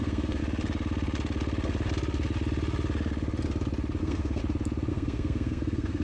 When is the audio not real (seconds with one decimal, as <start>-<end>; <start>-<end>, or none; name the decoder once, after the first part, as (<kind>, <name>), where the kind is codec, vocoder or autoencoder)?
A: 0.0-0.4 (codec, SNAC); 4.0-4.4; 4.9-6.0